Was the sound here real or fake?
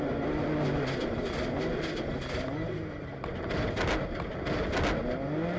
real